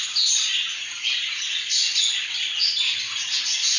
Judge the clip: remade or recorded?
recorded